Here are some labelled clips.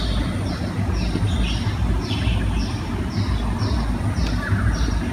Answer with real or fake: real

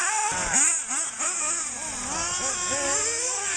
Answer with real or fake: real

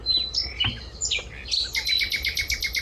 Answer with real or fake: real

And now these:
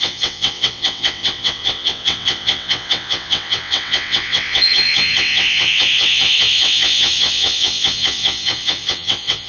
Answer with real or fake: fake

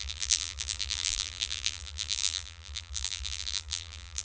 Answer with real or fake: fake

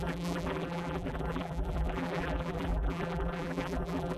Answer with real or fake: fake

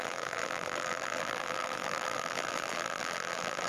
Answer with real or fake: fake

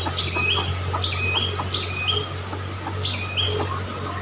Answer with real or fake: real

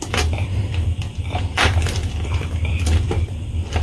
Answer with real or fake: fake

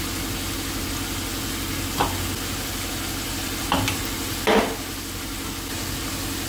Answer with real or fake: real